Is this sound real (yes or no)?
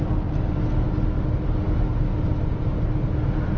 yes